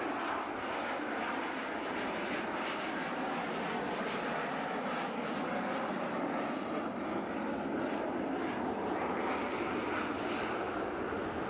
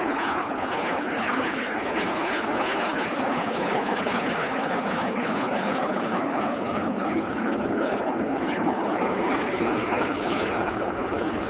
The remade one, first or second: second